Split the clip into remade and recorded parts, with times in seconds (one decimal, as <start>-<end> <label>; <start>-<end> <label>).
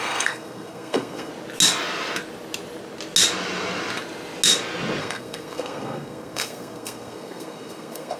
0.0-1.3 remade; 1.3-5.0 recorded; 5.0-8.2 remade